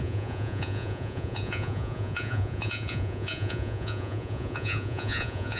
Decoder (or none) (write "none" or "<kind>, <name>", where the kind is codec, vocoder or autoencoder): vocoder, Vocos